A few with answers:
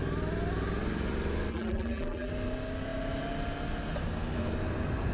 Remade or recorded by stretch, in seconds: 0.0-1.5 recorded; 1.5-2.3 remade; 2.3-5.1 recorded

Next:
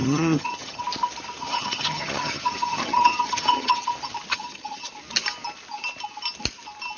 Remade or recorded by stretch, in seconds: 0.0-0.8 remade; 0.8-1.4 recorded; 1.4-3.9 remade; 3.9-4.3 recorded; 4.3-4.9 remade; 4.9-7.0 recorded

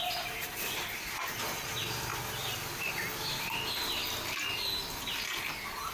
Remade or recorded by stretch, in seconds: 0.0-5.9 recorded

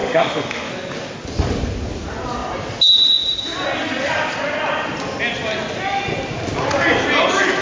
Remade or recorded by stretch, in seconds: 0.0-0.7 remade; 0.7-7.6 recorded

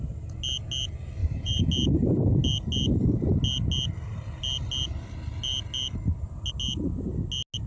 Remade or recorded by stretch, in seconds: 0.0-1.2 recorded; 1.2-1.7 remade; 1.7-7.7 recorded

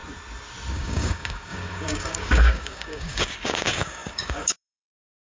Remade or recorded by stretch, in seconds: 0.0-0.7 recorded; 0.7-5.4 remade

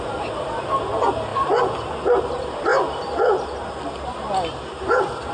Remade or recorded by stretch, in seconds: 0.0-5.3 recorded

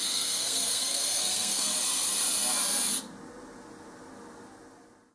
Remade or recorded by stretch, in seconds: 0.0-1.7 remade; 1.7-5.1 recorded